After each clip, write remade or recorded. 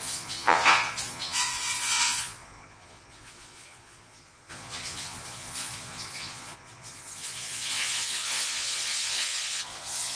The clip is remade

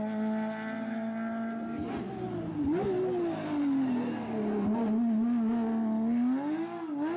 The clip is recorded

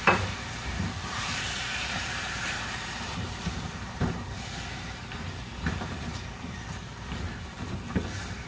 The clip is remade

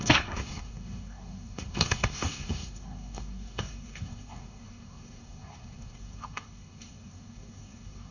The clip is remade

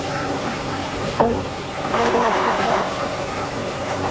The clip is remade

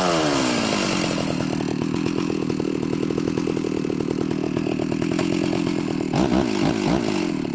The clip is recorded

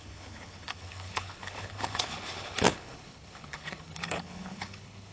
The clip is remade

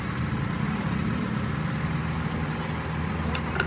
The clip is recorded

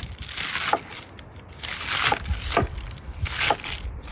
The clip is recorded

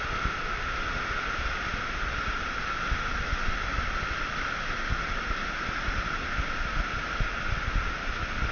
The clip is recorded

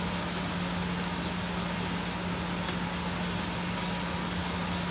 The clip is recorded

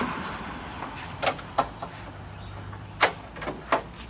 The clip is recorded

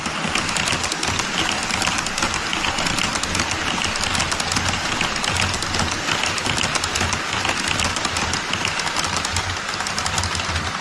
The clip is recorded